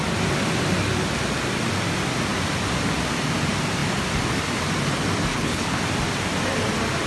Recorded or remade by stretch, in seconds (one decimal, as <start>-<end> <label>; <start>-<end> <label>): 0.0-5.3 recorded; 5.3-5.8 remade; 5.8-7.1 recorded